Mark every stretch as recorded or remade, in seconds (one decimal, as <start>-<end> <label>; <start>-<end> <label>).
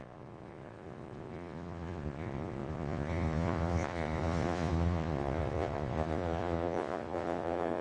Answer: 0.0-7.8 remade